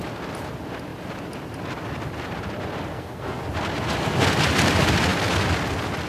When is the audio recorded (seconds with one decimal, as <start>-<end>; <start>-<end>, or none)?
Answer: 0.0-2.9; 3.4-6.1